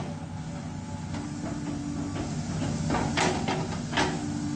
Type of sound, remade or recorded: recorded